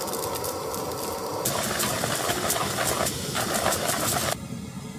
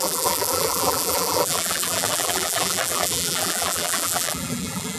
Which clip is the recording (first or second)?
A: first